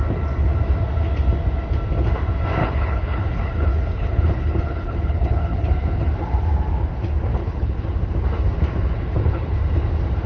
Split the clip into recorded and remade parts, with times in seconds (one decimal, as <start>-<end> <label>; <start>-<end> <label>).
0.0-2.6 recorded; 2.6-5.7 remade; 5.7-7.3 recorded; 7.3-7.9 remade; 7.9-8.9 recorded; 8.9-9.6 remade; 9.6-10.3 recorded